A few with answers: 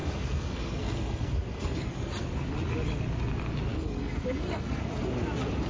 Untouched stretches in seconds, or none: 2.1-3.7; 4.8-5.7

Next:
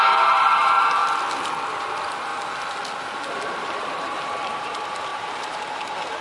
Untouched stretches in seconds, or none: 1.0-1.8; 2.3-3.4

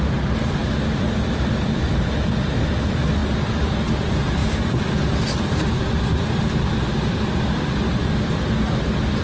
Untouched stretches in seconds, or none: 0.0-9.2

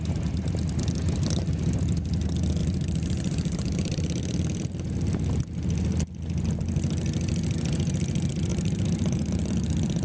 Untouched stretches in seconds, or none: 0.0-2.6; 4.2-8.5; 9.5-10.0